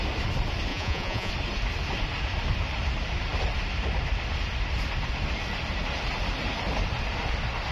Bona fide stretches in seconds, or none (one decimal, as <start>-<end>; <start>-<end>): 0.0-0.7; 1.3-7.7